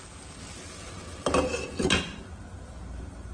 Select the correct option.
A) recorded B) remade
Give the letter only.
A